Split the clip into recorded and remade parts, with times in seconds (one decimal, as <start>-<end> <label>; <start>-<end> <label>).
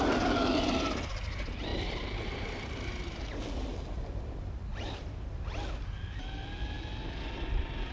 0.0-1.7 recorded; 1.7-3.2 remade; 3.2-3.7 recorded; 3.7-4.7 remade; 4.7-7.9 recorded